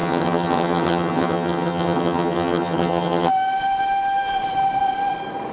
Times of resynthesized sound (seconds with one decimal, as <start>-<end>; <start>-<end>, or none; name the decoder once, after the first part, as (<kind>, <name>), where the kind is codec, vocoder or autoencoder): 0.0-3.3 (vocoder, HiFi-GAN)